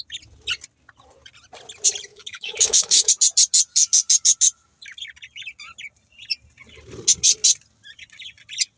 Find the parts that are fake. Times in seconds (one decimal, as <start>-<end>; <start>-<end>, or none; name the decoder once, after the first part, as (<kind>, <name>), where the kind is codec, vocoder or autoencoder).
2.1-3.1 (autoencoder, DAC-VAE)